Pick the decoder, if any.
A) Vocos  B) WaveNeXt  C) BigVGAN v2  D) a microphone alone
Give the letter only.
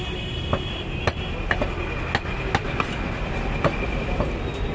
D